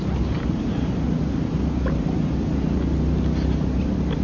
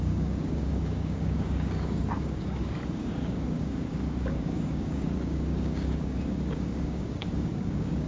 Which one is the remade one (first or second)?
second